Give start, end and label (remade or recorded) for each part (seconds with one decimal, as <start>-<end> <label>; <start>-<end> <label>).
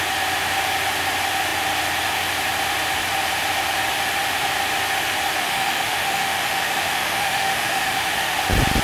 0.0-5.4 recorded; 5.4-8.4 remade; 8.4-8.8 recorded